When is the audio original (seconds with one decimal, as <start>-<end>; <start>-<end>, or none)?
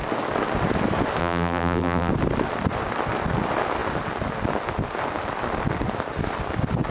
0.0-1.2; 2.1-6.9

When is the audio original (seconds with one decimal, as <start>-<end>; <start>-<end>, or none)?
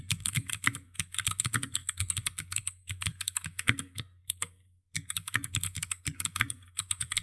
none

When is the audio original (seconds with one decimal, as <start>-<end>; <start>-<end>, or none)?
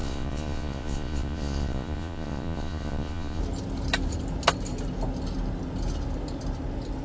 3.4-7.0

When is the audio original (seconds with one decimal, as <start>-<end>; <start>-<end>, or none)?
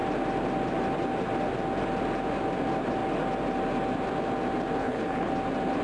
0.0-4.8; 5.3-5.8